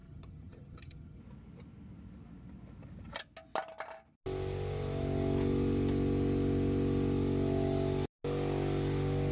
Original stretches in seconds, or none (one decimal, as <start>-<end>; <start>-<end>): 1.2-9.3